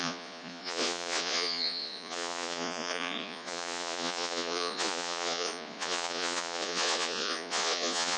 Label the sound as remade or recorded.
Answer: remade